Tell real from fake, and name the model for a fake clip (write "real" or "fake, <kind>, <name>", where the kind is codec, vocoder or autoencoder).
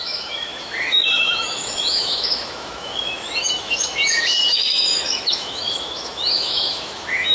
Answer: fake, autoencoder, DAC-VAE